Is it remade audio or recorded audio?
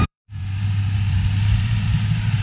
remade